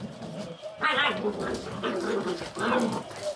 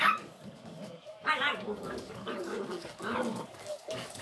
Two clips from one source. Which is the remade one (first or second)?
second